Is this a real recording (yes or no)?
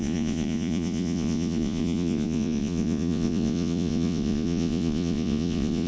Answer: no